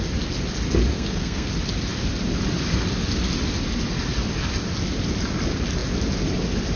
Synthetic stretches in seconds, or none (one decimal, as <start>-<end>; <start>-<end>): 0.9-1.5